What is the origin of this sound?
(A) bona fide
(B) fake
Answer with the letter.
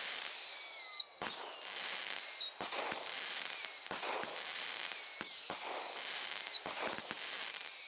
A